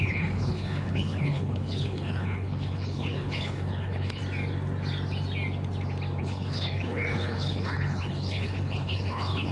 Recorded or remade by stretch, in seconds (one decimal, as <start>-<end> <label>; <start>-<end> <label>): 0.0-4.2 remade; 4.2-6.2 recorded; 6.2-9.5 remade